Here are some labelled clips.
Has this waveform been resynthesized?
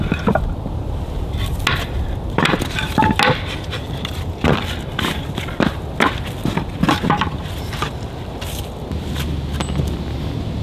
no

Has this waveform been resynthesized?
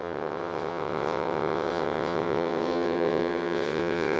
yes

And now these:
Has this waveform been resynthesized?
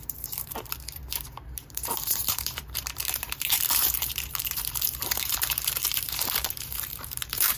yes